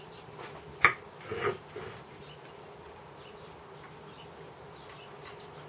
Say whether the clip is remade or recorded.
recorded